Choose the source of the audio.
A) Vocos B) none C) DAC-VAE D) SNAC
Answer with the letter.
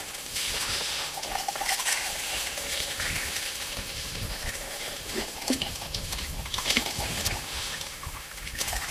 C